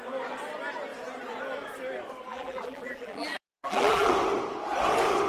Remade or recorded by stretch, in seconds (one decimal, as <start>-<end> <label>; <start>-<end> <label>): 0.0-2.3 recorded; 2.3-4.1 remade; 4.1-5.3 recorded